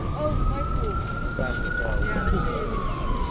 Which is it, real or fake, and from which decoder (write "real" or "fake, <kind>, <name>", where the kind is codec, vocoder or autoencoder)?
real